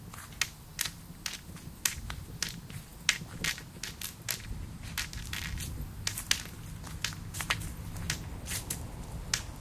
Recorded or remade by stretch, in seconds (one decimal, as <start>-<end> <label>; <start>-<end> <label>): 0.0-9.6 recorded

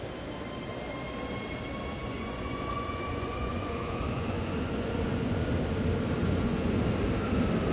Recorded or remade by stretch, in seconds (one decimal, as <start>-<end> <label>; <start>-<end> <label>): 0.0-2.0 recorded; 2.0-5.5 remade; 5.5-6.2 recorded; 6.2-6.8 remade; 6.8-7.7 recorded

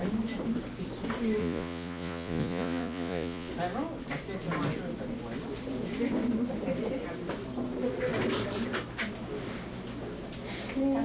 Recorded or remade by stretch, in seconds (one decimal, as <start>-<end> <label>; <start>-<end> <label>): 0.0-1.4 recorded; 1.4-3.5 remade; 3.5-11.0 recorded

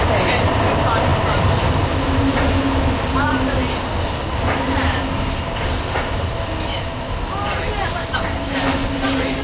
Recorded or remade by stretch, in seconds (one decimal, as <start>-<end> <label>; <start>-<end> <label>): 0.0-9.4 recorded

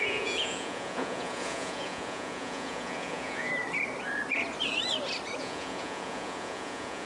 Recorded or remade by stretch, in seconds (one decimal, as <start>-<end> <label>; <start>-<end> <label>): 0.0-3.5 remade; 3.5-5.4 recorded; 5.4-7.1 remade